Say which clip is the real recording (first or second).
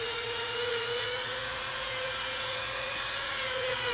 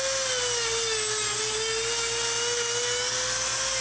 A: second